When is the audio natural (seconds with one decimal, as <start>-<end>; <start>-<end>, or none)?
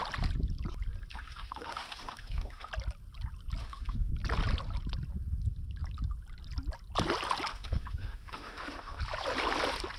0.0-1.1; 2.7-3.6; 4.1-7.5; 9.0-10.0